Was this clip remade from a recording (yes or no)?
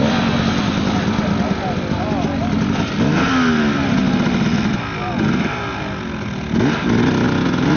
no